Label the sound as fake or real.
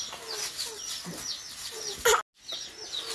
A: real